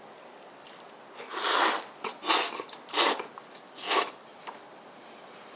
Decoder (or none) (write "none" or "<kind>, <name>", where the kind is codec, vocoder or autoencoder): none